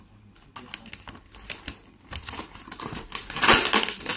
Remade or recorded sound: recorded